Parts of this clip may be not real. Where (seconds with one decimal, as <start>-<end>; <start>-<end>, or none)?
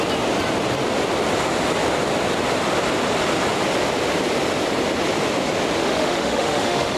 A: 5.8-7.0